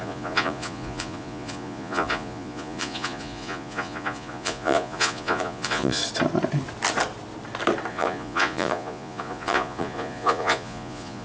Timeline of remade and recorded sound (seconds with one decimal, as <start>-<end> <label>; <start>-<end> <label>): 0.0-6.0 remade; 6.0-7.9 recorded; 7.9-11.2 remade